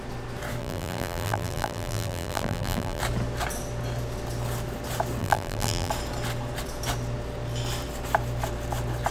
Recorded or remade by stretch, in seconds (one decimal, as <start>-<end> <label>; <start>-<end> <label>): 0.0-0.6 recorded; 0.6-3.0 remade; 3.0-5.2 recorded; 5.2-5.9 remade; 5.9-9.1 recorded